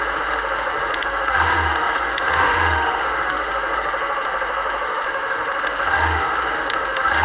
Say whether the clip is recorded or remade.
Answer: remade